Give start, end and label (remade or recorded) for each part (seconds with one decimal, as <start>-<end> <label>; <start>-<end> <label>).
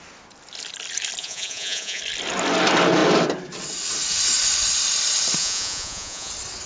0.0-1.2 recorded; 1.2-2.0 remade; 2.0-5.4 recorded; 5.4-6.3 remade; 6.3-6.7 recorded